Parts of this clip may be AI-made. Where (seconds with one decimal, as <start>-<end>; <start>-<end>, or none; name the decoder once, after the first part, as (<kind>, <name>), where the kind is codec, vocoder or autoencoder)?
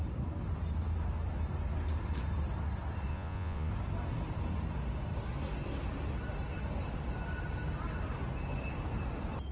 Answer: 3.1-3.7 (vocoder, Vocos)